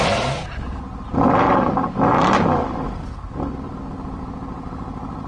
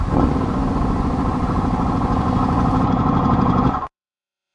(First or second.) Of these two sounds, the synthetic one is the second